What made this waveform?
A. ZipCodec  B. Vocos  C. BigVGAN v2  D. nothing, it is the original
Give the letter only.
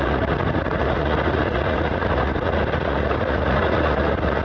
B